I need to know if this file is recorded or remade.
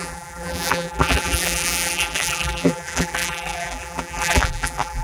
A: remade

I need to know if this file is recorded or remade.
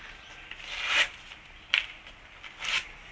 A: recorded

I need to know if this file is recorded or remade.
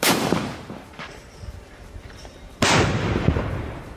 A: remade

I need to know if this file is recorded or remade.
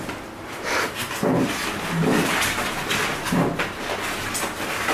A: recorded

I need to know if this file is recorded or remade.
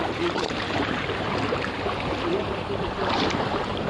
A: remade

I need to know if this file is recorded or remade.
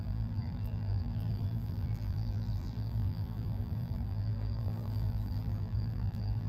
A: remade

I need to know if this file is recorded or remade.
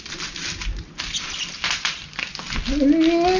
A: recorded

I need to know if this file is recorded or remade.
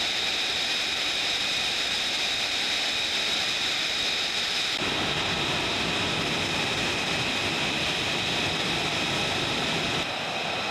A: remade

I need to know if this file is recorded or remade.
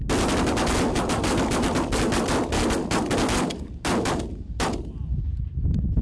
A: recorded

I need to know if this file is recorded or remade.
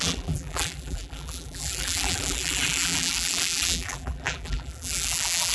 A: remade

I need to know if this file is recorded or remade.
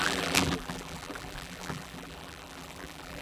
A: remade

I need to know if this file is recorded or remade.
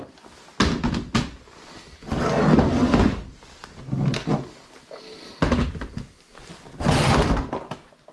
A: recorded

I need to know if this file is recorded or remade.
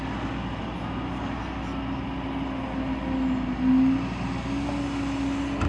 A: recorded